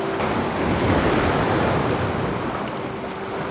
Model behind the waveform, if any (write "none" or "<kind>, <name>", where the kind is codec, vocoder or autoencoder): none